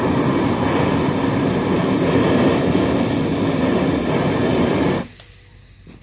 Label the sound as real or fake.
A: real